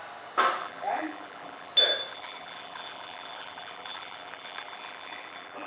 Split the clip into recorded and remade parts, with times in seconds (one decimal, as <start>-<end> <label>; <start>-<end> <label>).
0.0-0.6 recorded; 0.6-1.7 remade; 1.7-2.1 recorded; 2.1-5.7 remade